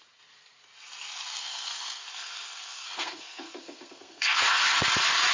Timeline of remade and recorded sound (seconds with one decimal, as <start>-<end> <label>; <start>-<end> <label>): 0.0-1.4 recorded; 1.4-4.6 remade; 4.6-5.3 recorded